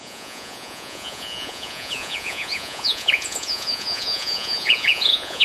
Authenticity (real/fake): fake